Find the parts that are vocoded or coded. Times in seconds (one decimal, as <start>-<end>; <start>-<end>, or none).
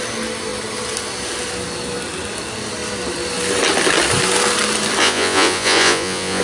5.0-6.4